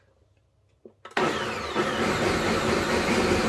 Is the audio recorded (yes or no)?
yes